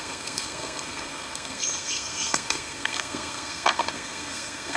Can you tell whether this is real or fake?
fake